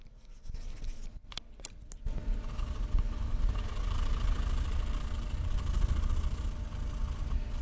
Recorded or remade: recorded